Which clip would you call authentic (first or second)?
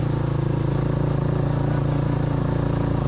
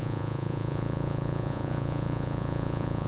first